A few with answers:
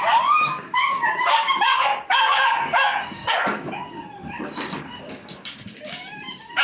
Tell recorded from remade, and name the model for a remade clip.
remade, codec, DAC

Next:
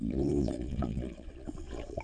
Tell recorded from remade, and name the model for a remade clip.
remade, vocoder, Vocos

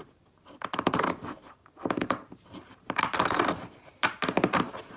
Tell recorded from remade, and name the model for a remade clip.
remade, vocoder, BigVGAN v2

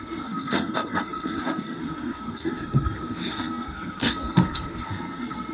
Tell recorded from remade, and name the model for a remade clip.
remade, codec, SNAC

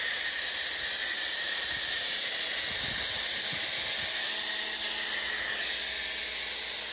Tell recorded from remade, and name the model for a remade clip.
recorded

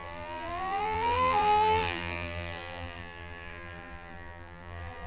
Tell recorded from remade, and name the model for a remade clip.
remade, vocoder, BigVGAN v2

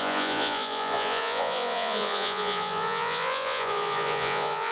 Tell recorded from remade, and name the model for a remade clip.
remade, vocoder, Vocos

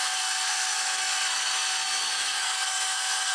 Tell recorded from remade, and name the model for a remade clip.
remade, codec, SNAC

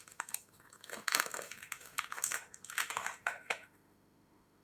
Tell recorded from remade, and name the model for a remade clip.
remade, autoencoder, DAC-VAE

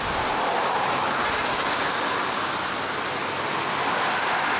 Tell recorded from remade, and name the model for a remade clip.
recorded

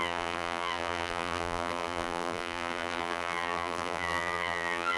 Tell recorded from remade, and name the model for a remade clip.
remade, vocoder, BigVGAN v2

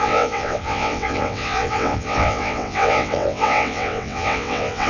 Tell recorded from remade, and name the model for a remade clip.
remade, vocoder, WaveNeXt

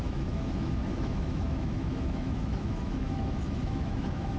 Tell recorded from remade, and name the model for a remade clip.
remade, autoencoder, DAC-VAE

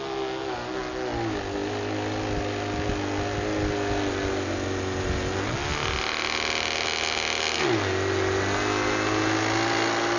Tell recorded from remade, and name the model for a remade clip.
recorded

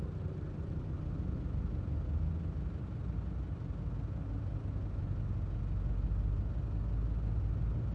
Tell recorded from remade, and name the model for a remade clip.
recorded